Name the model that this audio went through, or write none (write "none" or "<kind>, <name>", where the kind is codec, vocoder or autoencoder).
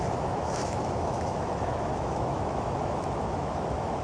autoencoder, DAC-VAE